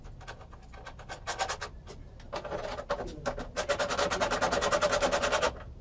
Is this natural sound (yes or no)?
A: yes